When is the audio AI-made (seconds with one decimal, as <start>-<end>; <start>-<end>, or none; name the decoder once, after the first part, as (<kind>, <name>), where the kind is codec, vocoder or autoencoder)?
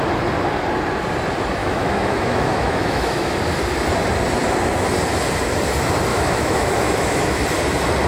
1.6-3.4 (autoencoder, DAC-VAE); 6.1-7.4